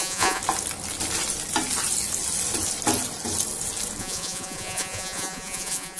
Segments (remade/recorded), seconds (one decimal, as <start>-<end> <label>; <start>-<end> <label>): 0.0-0.4 remade; 0.4-4.0 recorded; 4.0-6.0 remade